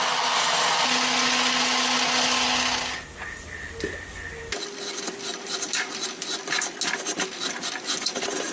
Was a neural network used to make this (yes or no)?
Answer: no